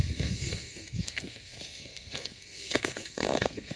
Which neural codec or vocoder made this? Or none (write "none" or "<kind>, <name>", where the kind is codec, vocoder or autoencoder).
codec, SNAC